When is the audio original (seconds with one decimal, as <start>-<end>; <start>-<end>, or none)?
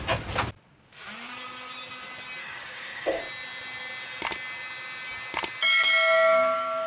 0.0-2.4; 3.2-5.7